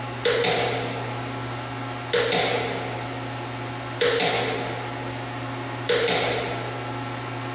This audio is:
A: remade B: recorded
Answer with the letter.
B